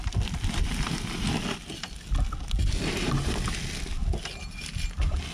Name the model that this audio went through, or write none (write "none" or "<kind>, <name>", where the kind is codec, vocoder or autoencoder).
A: none